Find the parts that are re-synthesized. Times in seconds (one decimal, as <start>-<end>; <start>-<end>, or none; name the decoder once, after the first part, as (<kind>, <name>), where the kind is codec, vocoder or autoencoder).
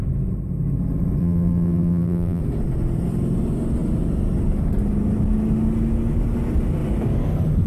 1.2-2.4 (vocoder, BigVGAN v2)